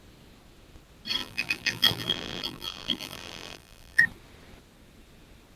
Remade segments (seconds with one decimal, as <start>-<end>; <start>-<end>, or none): 1.2-4.0